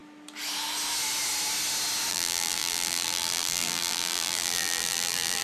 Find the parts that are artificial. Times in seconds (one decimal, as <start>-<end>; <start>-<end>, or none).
2.1-5.4